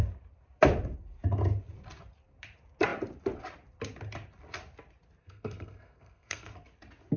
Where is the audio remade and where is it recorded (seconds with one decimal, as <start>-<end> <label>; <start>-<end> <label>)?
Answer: 0.0-5.2 recorded; 5.2-6.5 remade; 6.5-7.2 recorded